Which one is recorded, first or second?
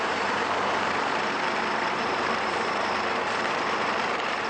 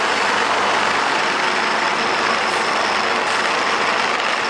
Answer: second